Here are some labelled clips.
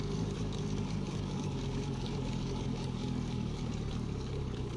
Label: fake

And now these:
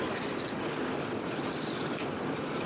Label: real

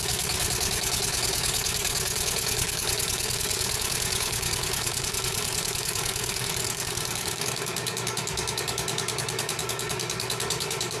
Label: fake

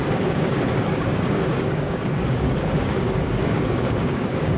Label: fake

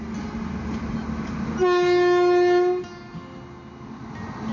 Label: real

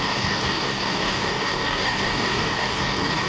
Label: fake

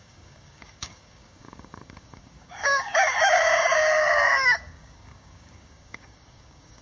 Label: fake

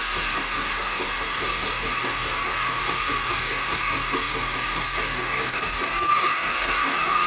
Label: fake